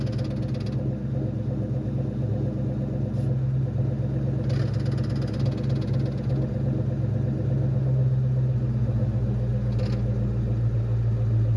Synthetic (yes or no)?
no